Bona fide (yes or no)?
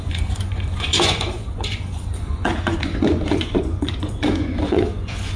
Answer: no